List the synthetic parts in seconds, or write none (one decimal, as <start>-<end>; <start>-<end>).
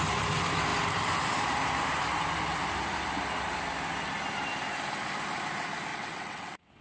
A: 5.9-6.8